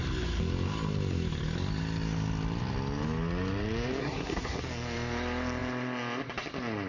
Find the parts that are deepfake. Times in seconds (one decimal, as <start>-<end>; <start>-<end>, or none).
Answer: 4.0-4.6